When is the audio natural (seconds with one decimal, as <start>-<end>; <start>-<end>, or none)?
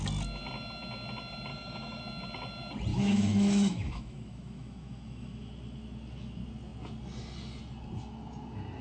0.0-1.5; 2.0-2.9; 5.5-8.8